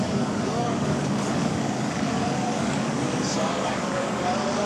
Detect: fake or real fake